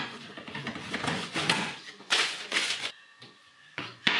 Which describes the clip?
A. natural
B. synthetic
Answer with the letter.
B